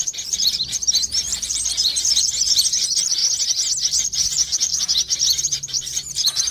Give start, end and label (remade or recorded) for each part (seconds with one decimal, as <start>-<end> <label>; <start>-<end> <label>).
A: 0.0-3.2 remade; 3.2-3.9 recorded; 3.9-6.5 remade